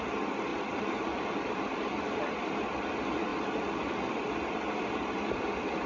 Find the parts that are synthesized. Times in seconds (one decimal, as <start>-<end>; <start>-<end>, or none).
none